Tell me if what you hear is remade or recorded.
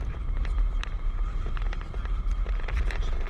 remade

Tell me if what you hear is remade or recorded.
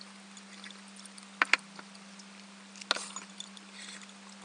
recorded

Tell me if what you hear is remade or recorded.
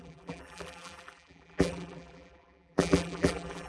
remade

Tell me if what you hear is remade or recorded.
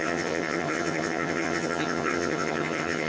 remade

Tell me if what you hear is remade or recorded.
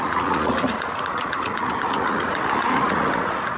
remade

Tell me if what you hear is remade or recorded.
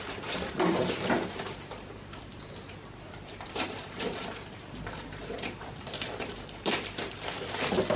remade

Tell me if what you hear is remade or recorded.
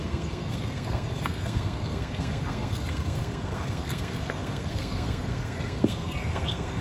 remade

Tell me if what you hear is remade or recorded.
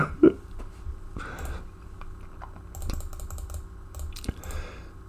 recorded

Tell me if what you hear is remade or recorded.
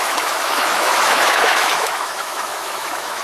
remade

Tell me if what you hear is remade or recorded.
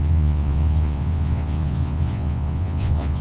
remade